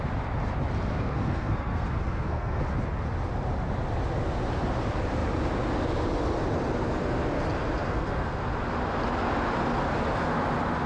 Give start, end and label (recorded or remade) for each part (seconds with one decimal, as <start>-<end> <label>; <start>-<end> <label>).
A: 0.0-0.9 recorded; 0.9-2.6 remade; 2.6-7.9 recorded; 7.9-8.4 remade; 8.4-10.9 recorded